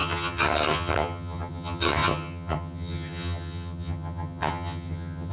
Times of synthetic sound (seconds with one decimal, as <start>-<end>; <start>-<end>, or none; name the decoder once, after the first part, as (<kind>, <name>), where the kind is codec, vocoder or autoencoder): 0.0-5.3 (vocoder, HiFi-GAN)